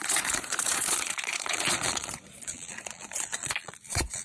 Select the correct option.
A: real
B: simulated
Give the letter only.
B